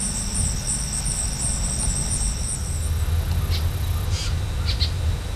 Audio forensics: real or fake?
real